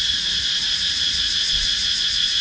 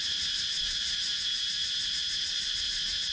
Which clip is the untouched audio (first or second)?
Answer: second